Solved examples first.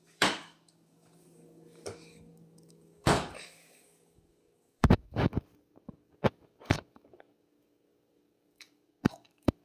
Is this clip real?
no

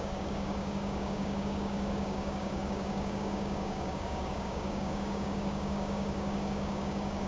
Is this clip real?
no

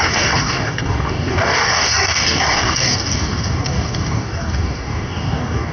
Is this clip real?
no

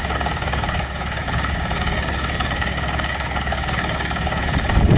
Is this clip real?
no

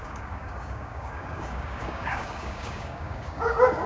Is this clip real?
no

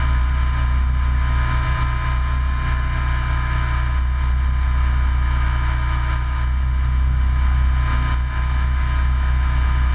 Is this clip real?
yes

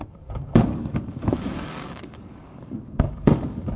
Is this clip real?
no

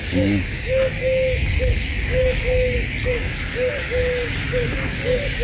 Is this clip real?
no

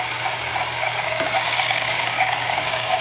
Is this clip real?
no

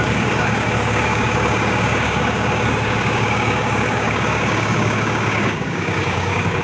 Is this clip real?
no